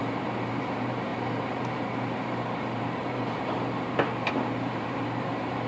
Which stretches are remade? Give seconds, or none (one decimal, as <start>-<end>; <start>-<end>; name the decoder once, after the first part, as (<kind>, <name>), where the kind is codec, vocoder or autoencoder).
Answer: 0.0-5.7 (vocoder, BigVGAN v2)